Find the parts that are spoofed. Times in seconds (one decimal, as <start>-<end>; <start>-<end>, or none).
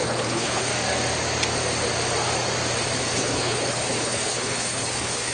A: 0.0-0.7; 3.2-5.3